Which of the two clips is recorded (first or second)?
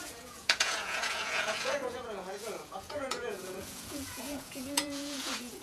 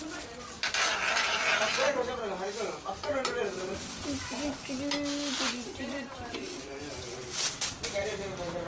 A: second